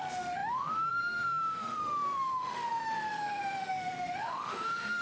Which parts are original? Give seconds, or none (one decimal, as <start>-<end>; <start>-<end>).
none

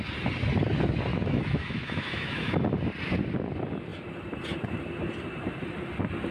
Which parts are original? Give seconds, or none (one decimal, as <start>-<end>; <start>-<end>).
0.0-1.1; 2.5-6.3

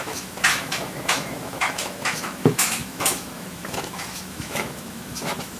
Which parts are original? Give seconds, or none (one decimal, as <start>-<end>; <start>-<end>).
none

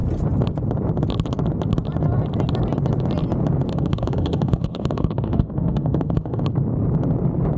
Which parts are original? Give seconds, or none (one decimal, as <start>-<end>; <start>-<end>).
0.0-3.7; 6.4-7.6

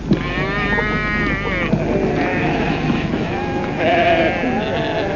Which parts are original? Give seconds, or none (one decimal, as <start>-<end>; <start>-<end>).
0.0-2.3; 3.9-5.2